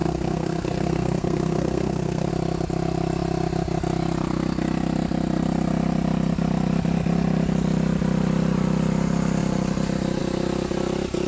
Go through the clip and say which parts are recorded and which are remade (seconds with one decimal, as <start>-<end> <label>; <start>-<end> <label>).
0.0-2.3 remade; 2.3-11.3 recorded